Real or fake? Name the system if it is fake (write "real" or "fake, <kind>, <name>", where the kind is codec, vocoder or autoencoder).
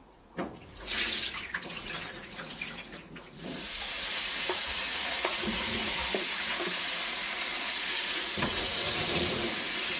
fake, vocoder, Vocos